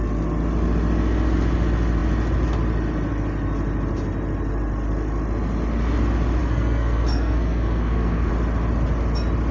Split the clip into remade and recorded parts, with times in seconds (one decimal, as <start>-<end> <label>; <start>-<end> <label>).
0.0-6.4 recorded; 6.4-8.3 remade; 8.3-9.5 recorded